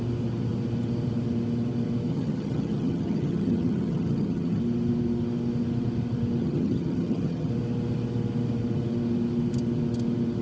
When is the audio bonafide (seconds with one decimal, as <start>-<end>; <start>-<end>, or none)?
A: 0.0-2.1; 4.6-6.4; 7.5-10.4